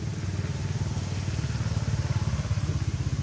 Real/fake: real